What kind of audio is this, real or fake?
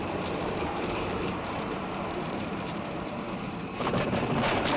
fake